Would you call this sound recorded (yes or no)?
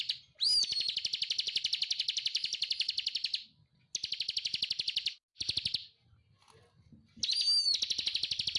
yes